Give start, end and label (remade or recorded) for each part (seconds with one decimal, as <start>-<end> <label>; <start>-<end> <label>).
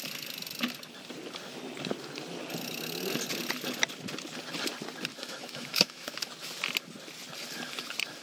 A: 0.0-5.1 recorded; 5.1-6.1 remade; 6.1-8.2 recorded